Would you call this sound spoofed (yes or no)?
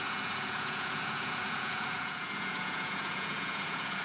yes